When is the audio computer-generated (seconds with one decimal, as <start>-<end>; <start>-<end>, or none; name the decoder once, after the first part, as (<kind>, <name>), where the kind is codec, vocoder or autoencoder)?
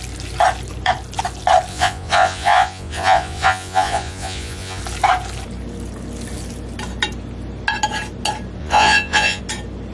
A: 1.7-4.8 (vocoder, Vocos); 8.6-9.4